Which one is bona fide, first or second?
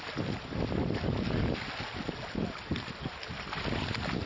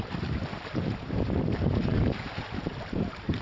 first